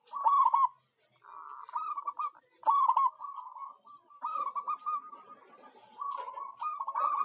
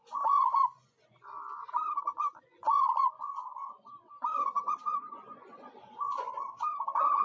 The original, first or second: first